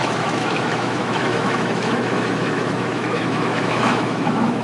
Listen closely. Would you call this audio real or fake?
fake